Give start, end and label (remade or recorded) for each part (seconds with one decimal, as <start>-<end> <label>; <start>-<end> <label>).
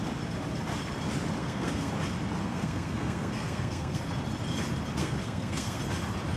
0.0-1.4 recorded; 1.4-1.9 remade; 1.9-2.4 recorded; 2.4-4.0 remade; 4.0-5.0 recorded; 5.0-5.8 remade; 5.8-6.4 recorded